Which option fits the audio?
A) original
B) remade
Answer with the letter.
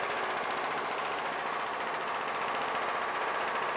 A